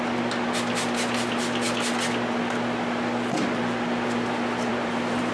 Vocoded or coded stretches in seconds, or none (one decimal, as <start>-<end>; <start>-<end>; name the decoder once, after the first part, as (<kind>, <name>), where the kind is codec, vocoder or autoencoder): 4.7-5.3 (vocoder, BigVGAN v2)